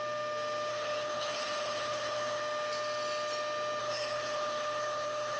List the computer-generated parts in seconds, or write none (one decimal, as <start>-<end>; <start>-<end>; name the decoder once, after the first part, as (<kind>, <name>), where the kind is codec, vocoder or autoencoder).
0.7-2.4 (codec, HILCodec); 3.8-5.4